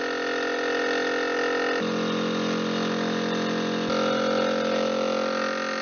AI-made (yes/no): no